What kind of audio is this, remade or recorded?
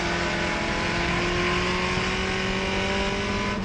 recorded